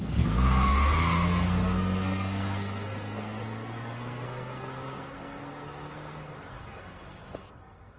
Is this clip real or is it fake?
fake